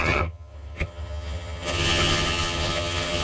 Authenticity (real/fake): fake